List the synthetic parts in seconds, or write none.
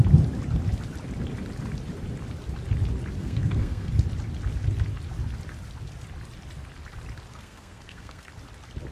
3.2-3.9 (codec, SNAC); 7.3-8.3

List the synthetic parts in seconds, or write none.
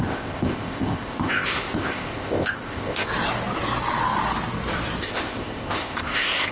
0.0-3.1 (codec, ZipCodec); 5.0-6.5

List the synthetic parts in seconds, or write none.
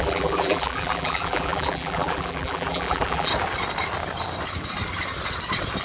0.0-3.3 (vocoder, BigVGAN v2)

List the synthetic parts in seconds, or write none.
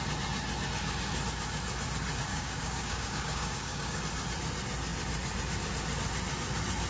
2.3-4.0 (codec, DAC)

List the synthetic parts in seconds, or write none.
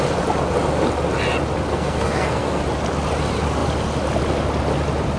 1.7-2.6 (codec, SNAC)